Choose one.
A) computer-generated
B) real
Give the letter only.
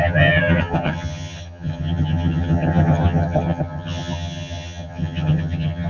A